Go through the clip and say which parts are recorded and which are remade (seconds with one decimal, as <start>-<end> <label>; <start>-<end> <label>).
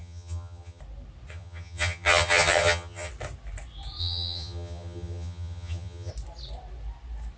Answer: 0.0-0.8 remade; 0.8-1.3 recorded; 1.3-3.1 remade; 3.1-4.0 recorded; 4.0-6.1 remade; 6.1-7.4 recorded